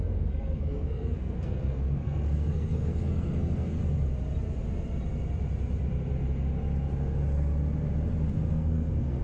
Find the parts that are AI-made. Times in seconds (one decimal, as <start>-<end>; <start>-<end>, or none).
0.0-3.8; 8.5-9.2